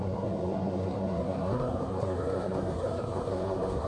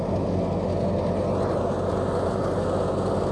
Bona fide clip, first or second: second